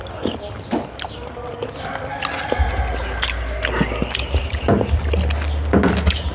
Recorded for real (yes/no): yes